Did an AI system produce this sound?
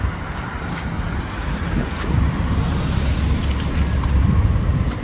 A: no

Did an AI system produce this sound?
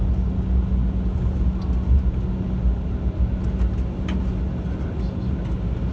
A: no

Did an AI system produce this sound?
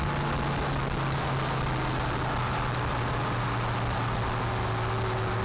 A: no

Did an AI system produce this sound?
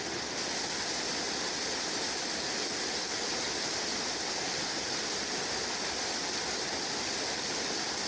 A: no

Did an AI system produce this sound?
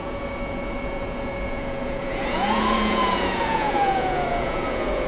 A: yes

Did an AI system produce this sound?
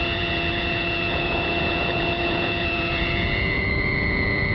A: yes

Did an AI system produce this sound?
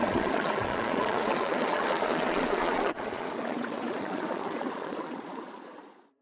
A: yes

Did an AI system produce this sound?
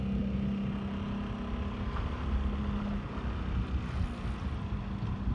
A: no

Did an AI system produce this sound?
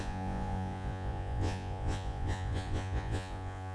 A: yes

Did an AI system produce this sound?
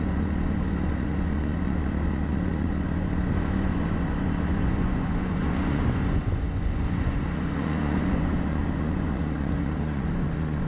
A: yes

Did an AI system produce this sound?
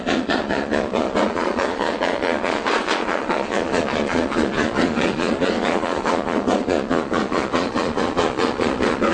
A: yes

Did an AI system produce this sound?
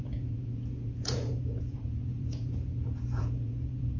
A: yes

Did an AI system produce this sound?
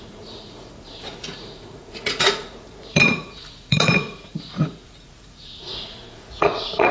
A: yes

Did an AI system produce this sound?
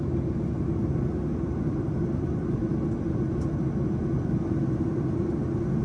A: no